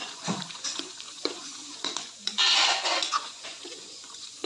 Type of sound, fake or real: fake